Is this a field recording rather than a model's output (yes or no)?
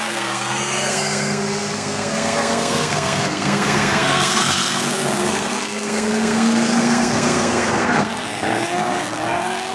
no